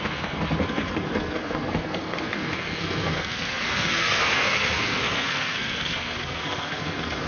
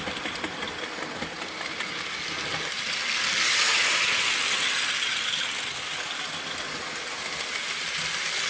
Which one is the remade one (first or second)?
first